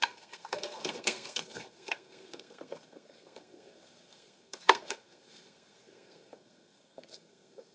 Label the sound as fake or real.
fake